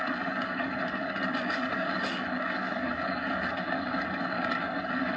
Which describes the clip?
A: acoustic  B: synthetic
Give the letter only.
B